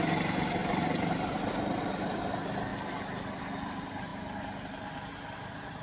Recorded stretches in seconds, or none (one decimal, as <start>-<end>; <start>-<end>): 0.0-0.6; 1.5-5.8